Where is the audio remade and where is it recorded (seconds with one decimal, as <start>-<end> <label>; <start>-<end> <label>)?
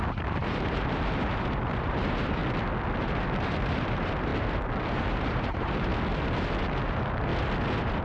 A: 0.0-2.4 remade; 2.4-3.0 recorded; 3.0-4.3 remade; 4.3-4.8 recorded; 4.8-5.9 remade; 5.9-6.6 recorded; 6.6-7.3 remade; 7.3-8.0 recorded